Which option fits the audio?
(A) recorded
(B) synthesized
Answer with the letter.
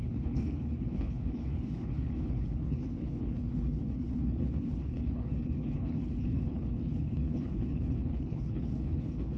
B